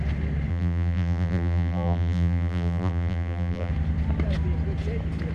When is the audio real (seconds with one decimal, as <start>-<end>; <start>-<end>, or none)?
0.0-0.5; 3.7-5.3